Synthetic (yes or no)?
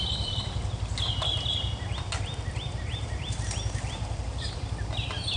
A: yes